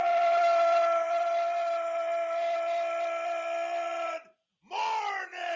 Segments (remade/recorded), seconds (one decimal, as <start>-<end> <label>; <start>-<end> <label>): 0.0-5.6 recorded